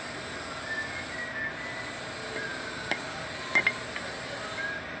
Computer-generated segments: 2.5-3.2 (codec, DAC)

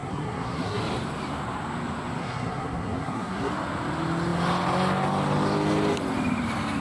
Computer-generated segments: 0.0-0.8 (codec, SNAC); 2.2-3.5

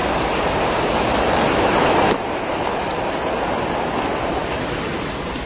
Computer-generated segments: none

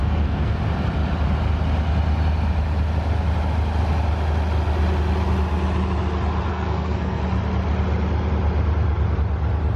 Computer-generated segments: 0.0-0.6 (codec, SNAC); 6.5-7.2

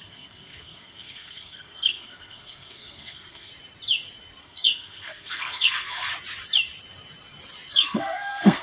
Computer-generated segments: 0.0-3.5 (codec, SNAC); 4.4-6.1; 7.7-8.6

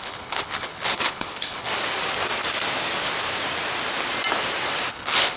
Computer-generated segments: 0.0-1.7 (codec, HILCodec); 4.9-5.4